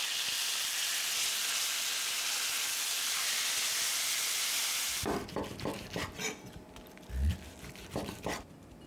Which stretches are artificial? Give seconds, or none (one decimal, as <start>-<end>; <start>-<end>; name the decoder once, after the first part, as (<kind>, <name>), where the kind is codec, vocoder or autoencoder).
none